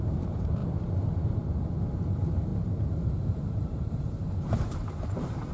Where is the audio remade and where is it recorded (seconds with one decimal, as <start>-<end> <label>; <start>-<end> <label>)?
0.0-0.6 remade; 0.6-2.1 recorded; 2.1-5.5 remade